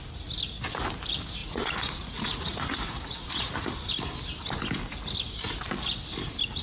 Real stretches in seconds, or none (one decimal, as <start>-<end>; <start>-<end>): 0.0-1.4; 3.9-6.6